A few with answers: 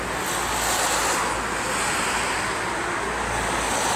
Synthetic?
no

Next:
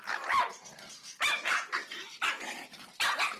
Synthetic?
yes